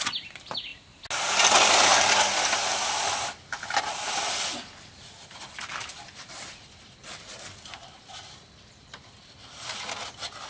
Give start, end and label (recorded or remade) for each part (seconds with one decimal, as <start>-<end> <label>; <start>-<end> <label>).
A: 0.0-10.5 recorded